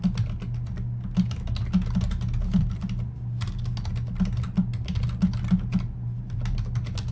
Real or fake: real